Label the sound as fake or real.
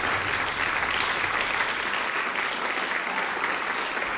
real